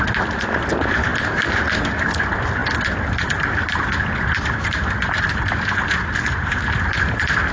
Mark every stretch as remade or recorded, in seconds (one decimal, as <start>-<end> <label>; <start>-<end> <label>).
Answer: 0.0-7.5 recorded